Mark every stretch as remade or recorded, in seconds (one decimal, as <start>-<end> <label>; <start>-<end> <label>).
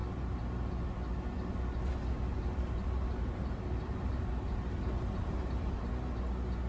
0.0-0.7 remade; 0.7-2.3 recorded; 2.3-5.9 remade; 5.9-6.7 recorded